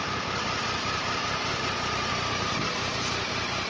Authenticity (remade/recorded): remade